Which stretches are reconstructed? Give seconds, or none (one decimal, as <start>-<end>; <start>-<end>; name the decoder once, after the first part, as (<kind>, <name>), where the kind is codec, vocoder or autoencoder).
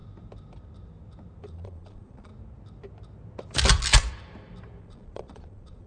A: 1.4-2.3 (vocoder, Vocos); 4.8-5.9